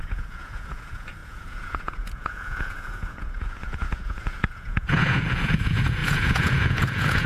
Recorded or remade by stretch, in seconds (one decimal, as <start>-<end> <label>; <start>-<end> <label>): 0.0-7.3 remade